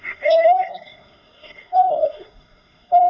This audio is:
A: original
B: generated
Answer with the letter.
B